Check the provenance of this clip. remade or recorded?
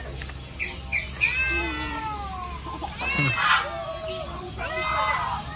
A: recorded